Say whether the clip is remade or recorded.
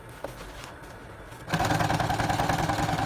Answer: recorded